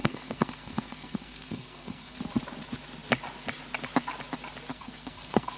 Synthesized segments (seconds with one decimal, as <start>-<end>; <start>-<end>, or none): 0.0-2.2; 4.7-5.6

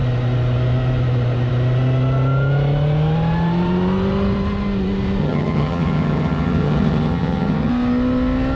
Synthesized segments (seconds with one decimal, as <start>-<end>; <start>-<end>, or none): 5.2-7.7

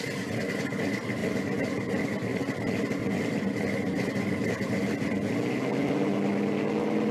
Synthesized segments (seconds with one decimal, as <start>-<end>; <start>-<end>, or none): none

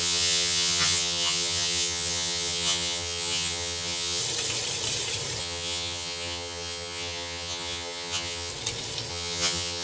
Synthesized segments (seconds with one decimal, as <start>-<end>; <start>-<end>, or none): 0.0-4.2; 5.4-8.5; 9.1-9.8

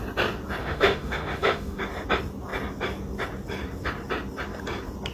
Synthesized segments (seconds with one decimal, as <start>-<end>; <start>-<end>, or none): 0.6-1.8